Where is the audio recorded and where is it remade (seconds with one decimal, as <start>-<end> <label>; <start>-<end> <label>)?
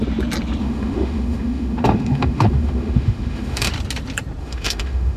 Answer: 0.0-0.6 recorded; 0.6-3.7 remade; 3.7-4.4 recorded; 4.4-5.2 remade